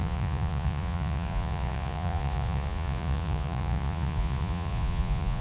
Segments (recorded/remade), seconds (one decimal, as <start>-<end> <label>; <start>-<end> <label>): 0.0-5.4 remade